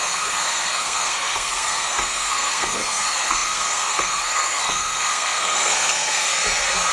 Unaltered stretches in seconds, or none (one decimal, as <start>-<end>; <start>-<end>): 6.3-6.9